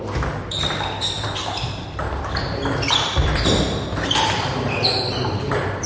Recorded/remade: remade